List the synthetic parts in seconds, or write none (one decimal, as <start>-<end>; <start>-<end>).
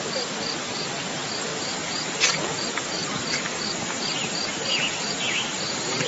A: 1.5-2.2; 3.0-6.1